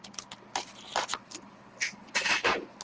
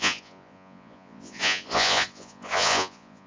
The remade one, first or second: second